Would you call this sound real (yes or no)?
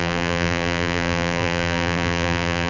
no